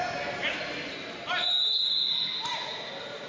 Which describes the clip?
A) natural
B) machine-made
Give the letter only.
A